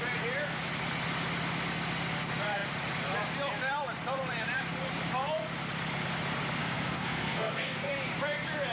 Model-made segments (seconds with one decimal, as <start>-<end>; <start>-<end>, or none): 6.6-7.9